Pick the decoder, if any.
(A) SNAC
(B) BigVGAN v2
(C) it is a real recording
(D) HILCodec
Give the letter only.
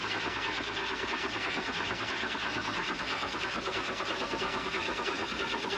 A